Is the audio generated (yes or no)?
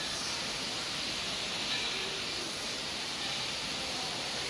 yes